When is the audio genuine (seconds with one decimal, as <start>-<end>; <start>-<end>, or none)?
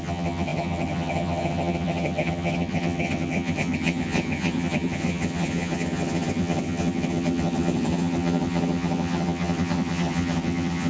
none